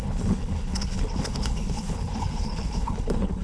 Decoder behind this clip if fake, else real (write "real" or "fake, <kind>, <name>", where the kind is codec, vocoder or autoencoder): fake, codec, HILCodec